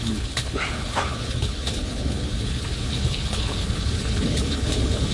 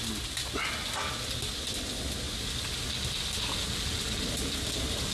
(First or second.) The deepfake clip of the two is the first